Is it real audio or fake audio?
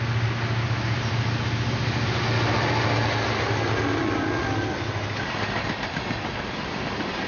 real